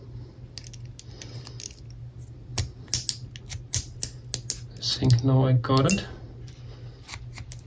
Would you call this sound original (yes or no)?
yes